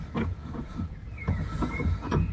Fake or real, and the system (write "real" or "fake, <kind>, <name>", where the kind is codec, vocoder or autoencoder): fake, vocoder, Vocos